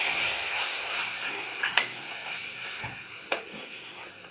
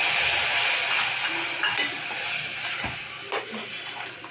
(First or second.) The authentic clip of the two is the second